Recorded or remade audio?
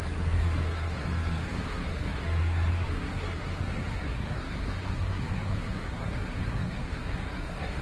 remade